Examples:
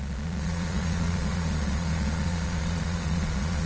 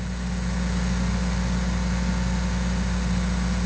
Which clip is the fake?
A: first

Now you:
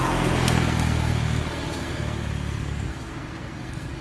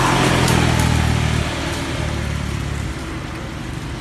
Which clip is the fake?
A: first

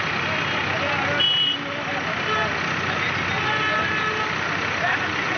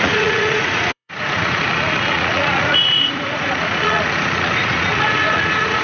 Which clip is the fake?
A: second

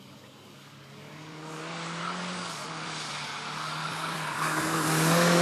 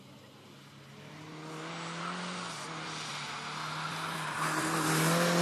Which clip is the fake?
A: first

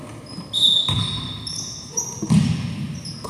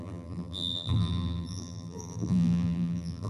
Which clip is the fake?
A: second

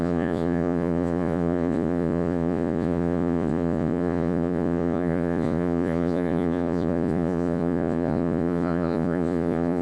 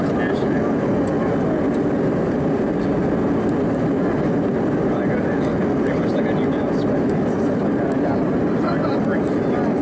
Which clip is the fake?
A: first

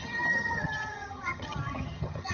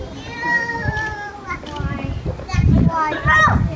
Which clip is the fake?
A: first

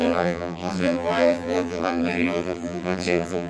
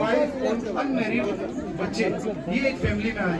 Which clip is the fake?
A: first